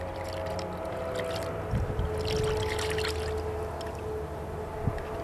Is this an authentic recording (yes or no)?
yes